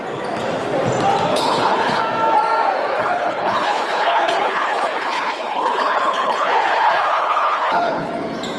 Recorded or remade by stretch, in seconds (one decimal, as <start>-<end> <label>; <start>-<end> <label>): 0.0-1.3 recorded; 1.3-2.0 remade; 2.0-3.0 recorded; 3.0-8.1 remade; 8.1-8.6 recorded